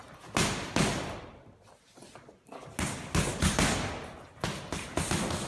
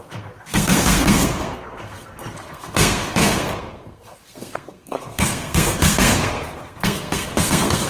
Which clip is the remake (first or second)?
second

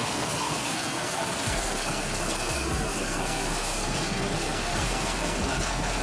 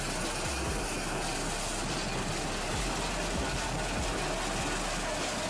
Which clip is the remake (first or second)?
first